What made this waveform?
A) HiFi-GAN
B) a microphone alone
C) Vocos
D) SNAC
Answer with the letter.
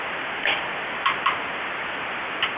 B